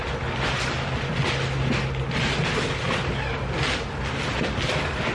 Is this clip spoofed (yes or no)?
no